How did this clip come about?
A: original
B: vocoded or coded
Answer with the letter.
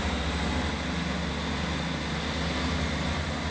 A